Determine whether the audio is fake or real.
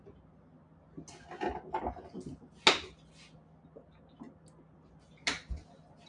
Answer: real